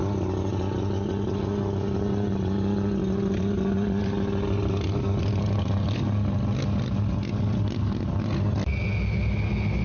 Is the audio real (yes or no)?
yes